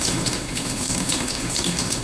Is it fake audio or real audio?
fake